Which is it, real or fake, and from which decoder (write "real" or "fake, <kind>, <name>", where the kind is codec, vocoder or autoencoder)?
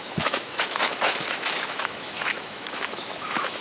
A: fake, autoencoder, DAC-VAE